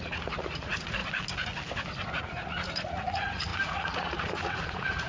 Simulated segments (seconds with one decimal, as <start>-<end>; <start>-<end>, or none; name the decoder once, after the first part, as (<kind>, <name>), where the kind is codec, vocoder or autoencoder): 0.0-1.0 (vocoder, Vocos); 2.1-5.1